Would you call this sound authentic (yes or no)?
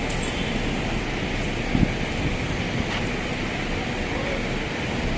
yes